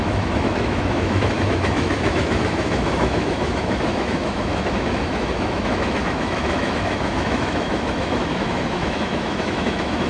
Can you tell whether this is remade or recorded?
remade